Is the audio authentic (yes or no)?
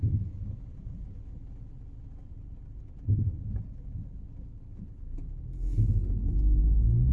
yes